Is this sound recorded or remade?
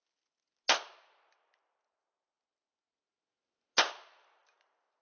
recorded